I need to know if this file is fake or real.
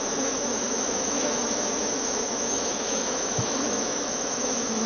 fake